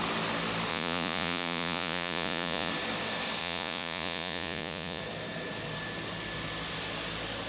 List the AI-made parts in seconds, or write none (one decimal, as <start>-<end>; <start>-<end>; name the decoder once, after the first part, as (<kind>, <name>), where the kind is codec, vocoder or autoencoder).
0.7-2.7 (vocoder, Vocos); 3.4-5.0